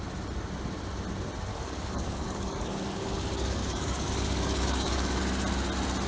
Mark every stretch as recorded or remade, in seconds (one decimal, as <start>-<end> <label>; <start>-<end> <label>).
0.0-1.5 recorded; 1.5-5.2 remade; 5.2-6.1 recorded